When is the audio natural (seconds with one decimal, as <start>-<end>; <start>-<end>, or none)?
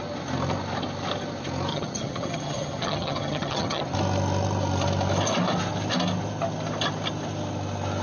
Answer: 0.0-1.7; 3.8-8.0